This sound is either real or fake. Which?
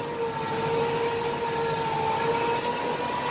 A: real